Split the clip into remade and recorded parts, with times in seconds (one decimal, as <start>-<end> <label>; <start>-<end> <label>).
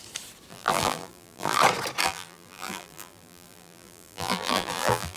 0.0-0.5 recorded; 0.5-1.6 remade; 1.6-2.0 recorded; 2.0-5.2 remade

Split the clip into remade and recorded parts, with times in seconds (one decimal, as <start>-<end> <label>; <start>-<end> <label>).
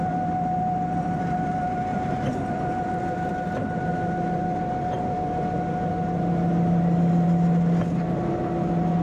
0.0-1.9 recorded; 1.9-2.5 remade; 2.5-9.0 recorded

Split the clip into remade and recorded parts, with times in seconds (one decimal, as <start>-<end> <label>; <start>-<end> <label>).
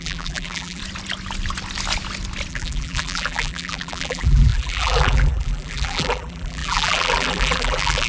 0.0-0.8 remade; 0.8-2.5 recorded; 2.5-8.1 remade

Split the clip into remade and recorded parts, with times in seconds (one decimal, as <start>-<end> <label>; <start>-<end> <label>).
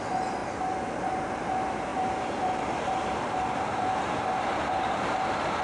0.0-0.4 remade; 0.4-0.9 recorded; 0.9-5.6 remade